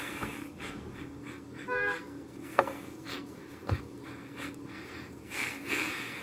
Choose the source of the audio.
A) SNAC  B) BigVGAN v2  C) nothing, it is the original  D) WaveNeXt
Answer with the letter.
A